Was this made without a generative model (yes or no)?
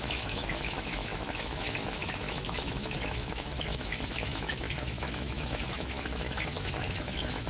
no